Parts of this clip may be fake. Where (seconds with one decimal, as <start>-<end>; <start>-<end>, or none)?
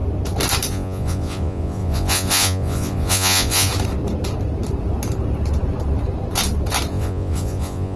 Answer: 0.7-3.7; 6.9-8.0